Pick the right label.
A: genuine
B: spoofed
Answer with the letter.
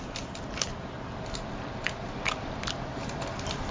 B